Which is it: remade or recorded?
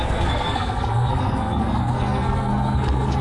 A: remade